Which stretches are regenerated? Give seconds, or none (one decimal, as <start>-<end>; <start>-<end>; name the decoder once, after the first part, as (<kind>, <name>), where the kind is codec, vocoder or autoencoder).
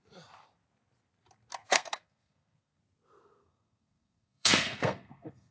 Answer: 1.6-2.8 (codec, SNAC); 3.2-5.5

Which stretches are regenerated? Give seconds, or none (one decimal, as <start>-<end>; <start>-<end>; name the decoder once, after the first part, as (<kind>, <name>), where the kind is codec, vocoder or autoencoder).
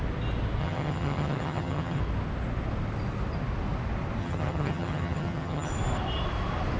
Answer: 0.6-2.0 (vocoder, HiFi-GAN); 4.2-5.7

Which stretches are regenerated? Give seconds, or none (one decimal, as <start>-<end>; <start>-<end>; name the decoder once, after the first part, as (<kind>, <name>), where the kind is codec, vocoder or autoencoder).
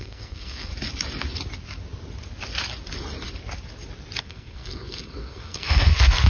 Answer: 0.0-0.7 (codec, SNAC); 4.2-6.3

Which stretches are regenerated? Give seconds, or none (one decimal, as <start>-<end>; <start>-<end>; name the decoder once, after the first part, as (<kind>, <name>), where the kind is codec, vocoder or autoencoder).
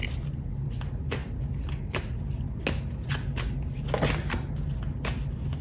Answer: none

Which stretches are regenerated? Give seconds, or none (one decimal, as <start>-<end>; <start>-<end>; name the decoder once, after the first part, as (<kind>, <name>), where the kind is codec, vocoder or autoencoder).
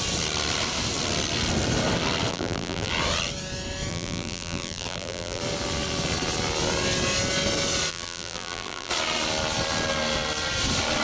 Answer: 2.3-2.9 (vocoder, BigVGAN v2); 3.9-5.4; 7.9-8.9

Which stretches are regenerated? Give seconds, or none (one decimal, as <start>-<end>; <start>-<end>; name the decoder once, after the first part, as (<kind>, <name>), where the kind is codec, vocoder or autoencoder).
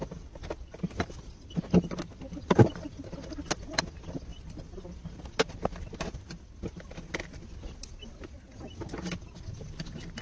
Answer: none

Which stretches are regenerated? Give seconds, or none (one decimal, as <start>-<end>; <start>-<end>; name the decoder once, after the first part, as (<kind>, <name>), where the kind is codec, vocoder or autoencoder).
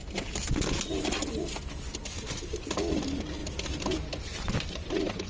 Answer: none